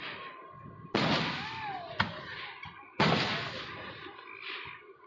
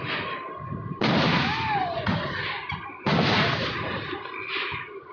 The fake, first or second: second